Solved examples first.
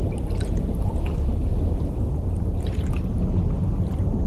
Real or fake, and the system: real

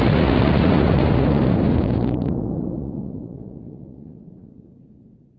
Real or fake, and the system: fake, vocoder, Vocos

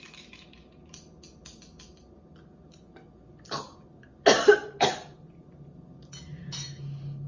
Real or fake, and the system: real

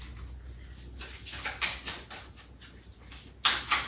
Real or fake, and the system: real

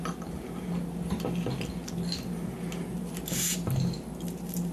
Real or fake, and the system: real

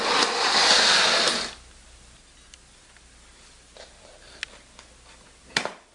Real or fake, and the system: real